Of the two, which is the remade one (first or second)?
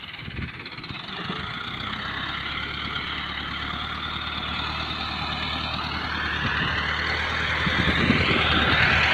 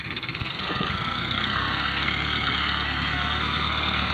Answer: second